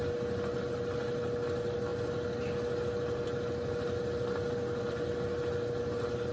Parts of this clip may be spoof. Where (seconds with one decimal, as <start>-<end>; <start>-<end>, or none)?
none